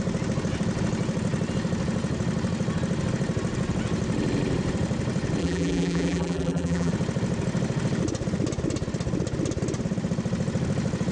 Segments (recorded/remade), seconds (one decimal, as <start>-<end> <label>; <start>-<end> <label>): 0.0-5.4 recorded; 5.4-6.9 remade; 6.9-11.1 recorded